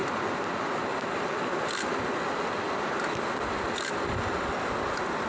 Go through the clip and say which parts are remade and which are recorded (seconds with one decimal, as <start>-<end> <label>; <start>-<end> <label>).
0.0-5.3 recorded